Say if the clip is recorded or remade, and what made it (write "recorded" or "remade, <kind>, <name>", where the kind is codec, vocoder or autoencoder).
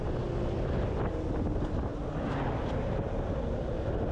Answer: recorded